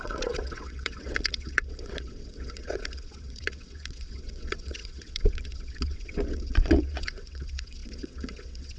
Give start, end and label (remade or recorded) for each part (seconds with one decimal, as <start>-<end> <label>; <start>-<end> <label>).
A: 0.0-8.8 remade